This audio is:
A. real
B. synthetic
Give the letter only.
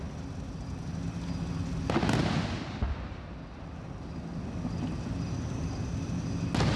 A